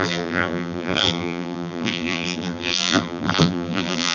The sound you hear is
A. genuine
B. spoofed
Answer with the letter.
B